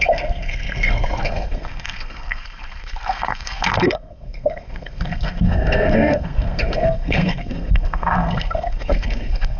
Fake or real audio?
fake